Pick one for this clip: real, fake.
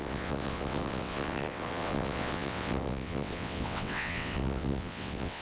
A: fake